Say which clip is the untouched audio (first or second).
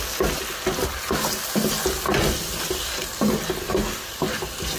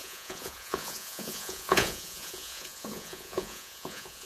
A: first